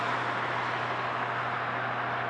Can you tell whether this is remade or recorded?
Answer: recorded